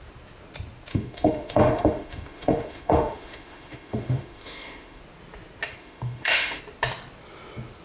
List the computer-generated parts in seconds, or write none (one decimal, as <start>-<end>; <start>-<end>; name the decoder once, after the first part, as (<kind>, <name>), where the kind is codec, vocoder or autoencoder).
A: 0.9-5.0 (autoencoder, DAC-VAE); 5.8-6.6